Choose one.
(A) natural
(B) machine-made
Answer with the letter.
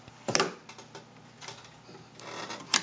A